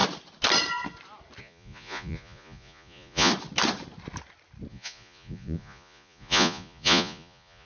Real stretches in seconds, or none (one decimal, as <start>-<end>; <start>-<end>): 0.0-1.4; 3.3-4.7